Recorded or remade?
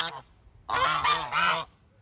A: recorded